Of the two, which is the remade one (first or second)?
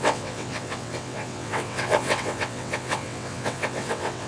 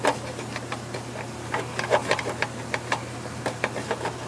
first